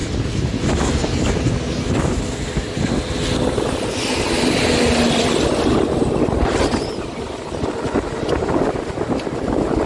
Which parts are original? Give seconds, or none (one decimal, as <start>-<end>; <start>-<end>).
0.0-9.9